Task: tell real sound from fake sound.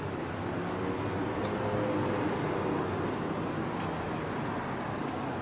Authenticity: real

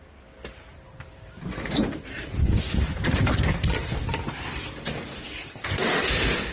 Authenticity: fake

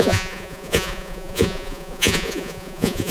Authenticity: fake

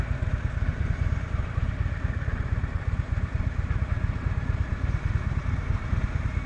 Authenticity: fake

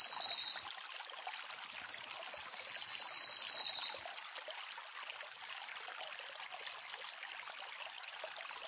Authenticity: real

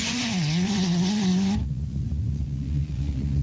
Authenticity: fake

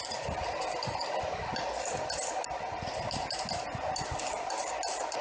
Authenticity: real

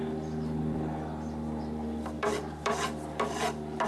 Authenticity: fake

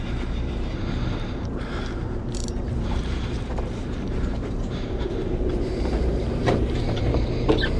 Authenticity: fake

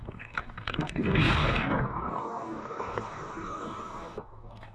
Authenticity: fake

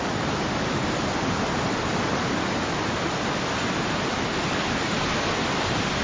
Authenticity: real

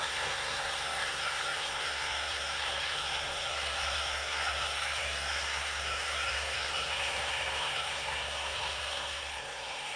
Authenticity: fake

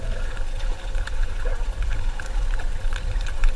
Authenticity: fake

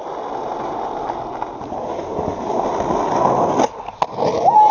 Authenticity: real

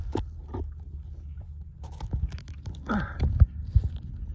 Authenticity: real